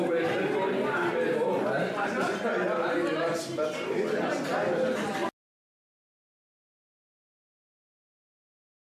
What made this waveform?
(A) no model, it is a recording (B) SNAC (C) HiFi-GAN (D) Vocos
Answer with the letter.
A